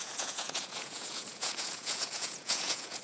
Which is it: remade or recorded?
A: remade